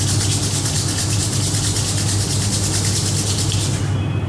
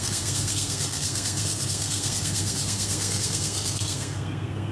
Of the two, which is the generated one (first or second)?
second